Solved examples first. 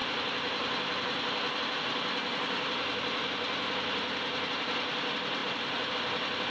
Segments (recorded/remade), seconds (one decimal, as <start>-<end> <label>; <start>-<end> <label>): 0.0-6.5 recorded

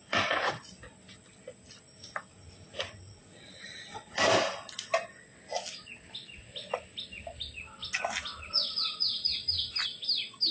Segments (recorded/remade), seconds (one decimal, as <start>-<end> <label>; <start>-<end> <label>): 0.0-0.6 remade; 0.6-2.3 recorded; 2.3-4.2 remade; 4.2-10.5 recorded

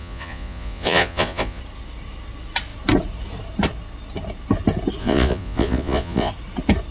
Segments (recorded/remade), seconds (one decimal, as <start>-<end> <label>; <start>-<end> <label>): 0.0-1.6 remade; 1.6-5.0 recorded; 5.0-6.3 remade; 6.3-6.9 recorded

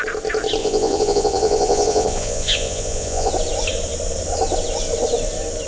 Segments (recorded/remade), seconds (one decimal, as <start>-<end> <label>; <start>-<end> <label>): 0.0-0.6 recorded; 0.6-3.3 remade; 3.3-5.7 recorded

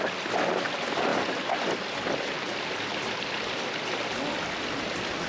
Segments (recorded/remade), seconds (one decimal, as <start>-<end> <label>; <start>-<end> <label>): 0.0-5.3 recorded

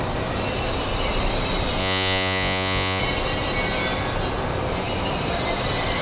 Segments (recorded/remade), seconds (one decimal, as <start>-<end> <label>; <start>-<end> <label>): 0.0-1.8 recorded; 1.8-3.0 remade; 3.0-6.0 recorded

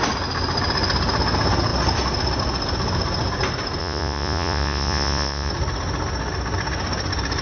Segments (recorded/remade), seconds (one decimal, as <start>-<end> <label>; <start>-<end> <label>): 0.0-3.8 recorded; 3.8-5.5 remade; 5.5-7.4 recorded

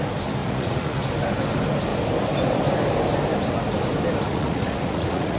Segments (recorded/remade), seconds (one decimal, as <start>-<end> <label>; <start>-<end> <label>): 0.0-0.4 recorded; 0.4-1.1 remade; 1.1-4.3 recorded; 4.3-5.4 remade